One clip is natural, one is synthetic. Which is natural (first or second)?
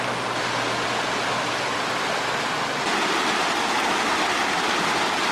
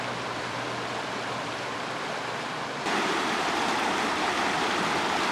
first